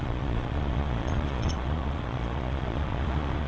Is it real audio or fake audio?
fake